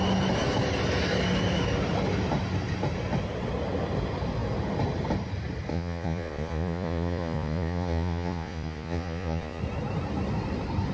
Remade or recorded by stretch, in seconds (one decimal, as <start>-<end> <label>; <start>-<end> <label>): 0.0-5.7 recorded; 5.7-9.6 remade; 9.6-10.9 recorded